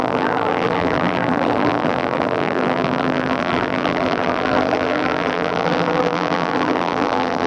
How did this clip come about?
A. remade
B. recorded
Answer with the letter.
A